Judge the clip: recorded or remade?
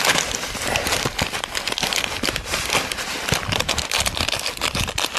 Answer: recorded